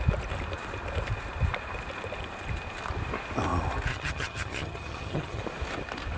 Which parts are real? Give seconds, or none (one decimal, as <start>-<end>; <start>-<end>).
0.0-3.9; 5.4-6.2